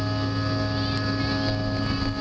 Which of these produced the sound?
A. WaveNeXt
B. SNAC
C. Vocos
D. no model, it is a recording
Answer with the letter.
D